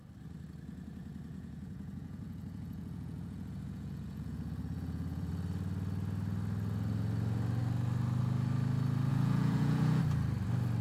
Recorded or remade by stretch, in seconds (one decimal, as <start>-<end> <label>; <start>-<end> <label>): 0.0-1.3 recorded; 1.3-5.3 remade; 5.3-9.1 recorded; 9.1-10.0 remade; 10.0-10.8 recorded